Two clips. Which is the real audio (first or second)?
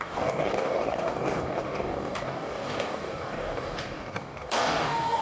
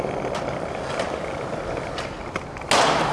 second